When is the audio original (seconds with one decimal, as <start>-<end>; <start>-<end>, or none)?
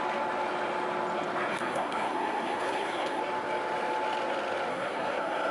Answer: 0.0-1.5; 3.2-4.7